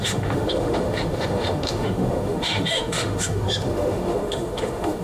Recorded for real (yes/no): no